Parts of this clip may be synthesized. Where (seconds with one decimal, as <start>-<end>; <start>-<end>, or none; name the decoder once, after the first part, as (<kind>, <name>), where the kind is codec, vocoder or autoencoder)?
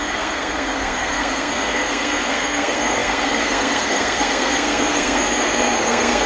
0.0-6.3 (codec, SNAC)